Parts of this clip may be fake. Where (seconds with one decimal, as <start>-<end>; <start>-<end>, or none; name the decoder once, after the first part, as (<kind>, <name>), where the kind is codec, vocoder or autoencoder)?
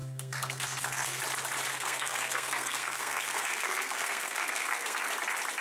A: 0.0-1.2 (codec, SNAC); 1.7-5.1